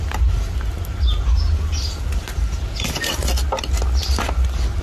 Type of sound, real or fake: real